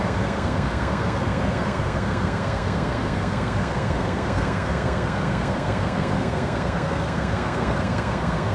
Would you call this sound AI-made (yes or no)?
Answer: yes